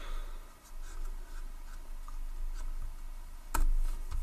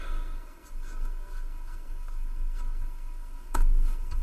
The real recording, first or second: first